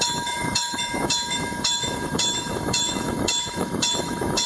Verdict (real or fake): fake